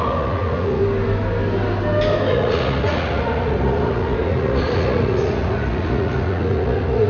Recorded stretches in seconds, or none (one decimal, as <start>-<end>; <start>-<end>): 0.8-2.3